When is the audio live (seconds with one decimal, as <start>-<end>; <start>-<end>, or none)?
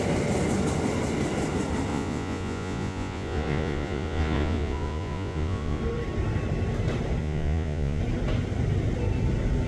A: 0.0-1.9; 5.8-7.2; 8.0-9.7